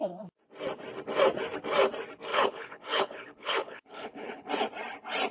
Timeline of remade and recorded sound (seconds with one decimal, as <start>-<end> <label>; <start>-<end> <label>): 0.0-2.3 recorded; 2.3-4.5 remade; 4.5-5.3 recorded